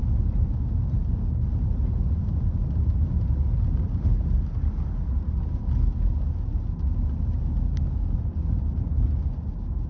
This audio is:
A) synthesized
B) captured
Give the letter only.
B